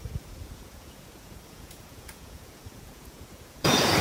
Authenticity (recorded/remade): remade